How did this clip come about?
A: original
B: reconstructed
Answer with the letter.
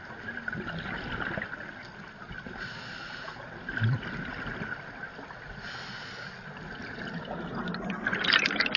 A